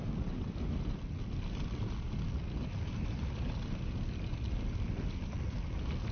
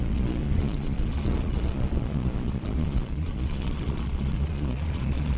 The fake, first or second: second